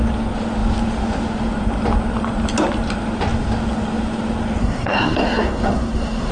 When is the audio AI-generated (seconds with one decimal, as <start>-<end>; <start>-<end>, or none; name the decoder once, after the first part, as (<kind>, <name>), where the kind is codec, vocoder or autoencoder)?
4.6-6.3 (codec, SNAC)